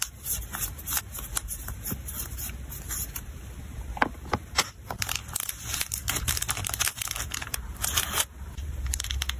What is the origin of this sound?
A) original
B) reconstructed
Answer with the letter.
B